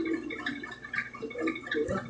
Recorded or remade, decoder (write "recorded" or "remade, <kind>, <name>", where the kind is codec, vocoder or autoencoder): recorded